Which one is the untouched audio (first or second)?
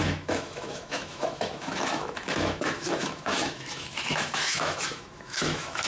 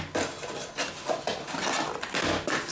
second